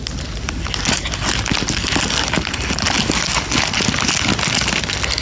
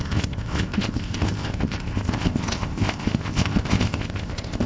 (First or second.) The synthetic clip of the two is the second